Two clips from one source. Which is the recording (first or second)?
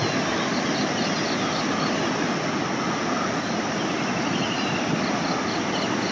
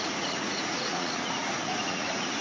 first